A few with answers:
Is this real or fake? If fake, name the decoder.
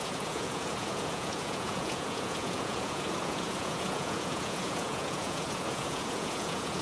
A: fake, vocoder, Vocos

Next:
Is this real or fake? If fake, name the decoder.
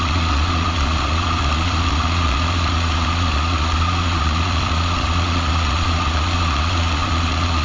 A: fake, vocoder, Vocos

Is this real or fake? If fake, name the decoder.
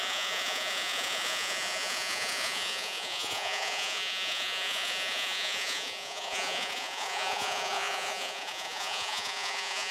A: fake, vocoder, Vocos